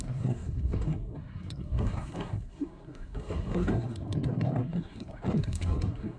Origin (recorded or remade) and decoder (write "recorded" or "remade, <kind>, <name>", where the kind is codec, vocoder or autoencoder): remade, codec, SNAC